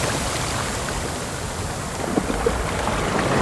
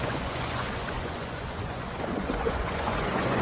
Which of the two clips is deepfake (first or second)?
second